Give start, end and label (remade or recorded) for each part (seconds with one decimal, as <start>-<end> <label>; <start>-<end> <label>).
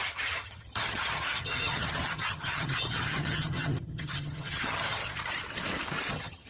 0.0-5.0 remade; 5.0-6.1 recorded; 6.1-6.5 remade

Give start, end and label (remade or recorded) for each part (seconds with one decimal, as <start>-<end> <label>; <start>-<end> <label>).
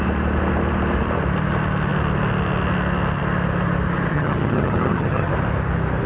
0.0-4.1 recorded; 4.1-5.3 remade; 5.3-6.1 recorded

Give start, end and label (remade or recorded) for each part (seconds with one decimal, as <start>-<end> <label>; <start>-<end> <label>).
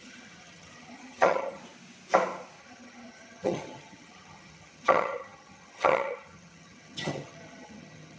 0.0-1.6 remade; 1.6-2.6 recorded; 2.6-8.2 remade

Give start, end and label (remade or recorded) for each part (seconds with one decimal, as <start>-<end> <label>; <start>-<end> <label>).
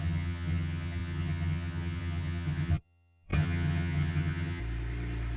0.0-4.6 remade; 4.6-5.4 recorded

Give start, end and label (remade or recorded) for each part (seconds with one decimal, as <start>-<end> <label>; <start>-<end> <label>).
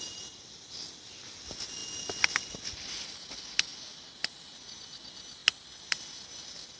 0.0-6.8 recorded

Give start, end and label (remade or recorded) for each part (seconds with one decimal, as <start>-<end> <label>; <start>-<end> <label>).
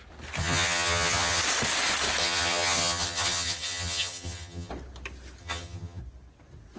0.0-0.4 recorded; 0.4-1.4 remade; 1.4-2.2 recorded; 2.2-4.7 remade; 4.7-5.4 recorded; 5.4-6.0 remade; 6.0-6.8 recorded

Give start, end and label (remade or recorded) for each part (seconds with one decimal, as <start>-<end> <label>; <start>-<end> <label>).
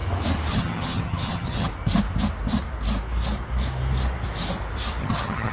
0.0-0.5 recorded; 0.5-1.7 remade; 1.7-5.0 recorded; 5.0-5.5 remade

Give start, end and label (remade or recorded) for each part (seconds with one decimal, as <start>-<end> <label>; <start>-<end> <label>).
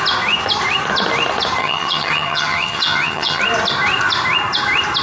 0.0-1.6 recorded; 1.6-3.4 remade; 3.4-5.0 recorded